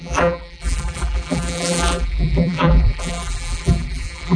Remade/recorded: remade